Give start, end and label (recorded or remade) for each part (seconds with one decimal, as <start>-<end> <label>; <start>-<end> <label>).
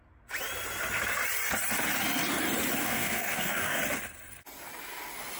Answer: 0.0-2.8 recorded; 2.8-3.8 remade; 3.8-5.4 recorded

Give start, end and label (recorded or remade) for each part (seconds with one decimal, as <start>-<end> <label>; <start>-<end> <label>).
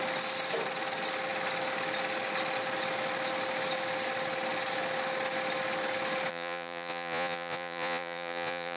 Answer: 0.0-6.3 recorded; 6.3-8.8 remade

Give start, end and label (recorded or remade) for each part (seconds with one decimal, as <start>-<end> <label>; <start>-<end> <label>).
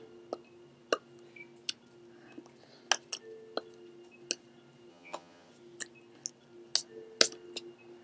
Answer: 0.0-4.9 recorded; 4.9-5.5 remade; 5.5-8.0 recorded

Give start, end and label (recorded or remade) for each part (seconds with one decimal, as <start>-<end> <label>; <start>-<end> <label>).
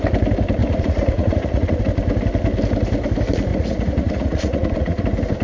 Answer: 0.0-0.6 recorded; 0.6-1.8 remade; 1.8-3.5 recorded; 3.5-5.0 remade; 5.0-5.4 recorded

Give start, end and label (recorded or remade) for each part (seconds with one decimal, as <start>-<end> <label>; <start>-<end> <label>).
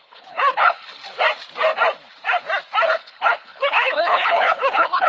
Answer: 0.0-1.0 remade; 1.0-2.9 recorded; 2.9-5.1 remade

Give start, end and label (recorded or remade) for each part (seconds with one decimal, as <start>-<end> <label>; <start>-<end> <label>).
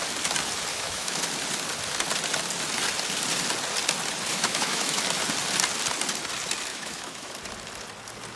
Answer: 0.0-0.7 recorded; 0.7-1.2 remade; 1.2-4.3 recorded; 4.3-5.0 remade; 5.0-6.7 recorded; 6.7-7.3 remade; 7.3-8.4 recorded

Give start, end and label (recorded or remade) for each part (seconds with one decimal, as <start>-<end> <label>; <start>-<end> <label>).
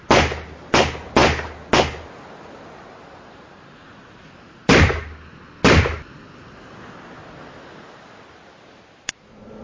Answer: 0.0-9.6 recorded